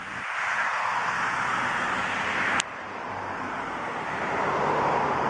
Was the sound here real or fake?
real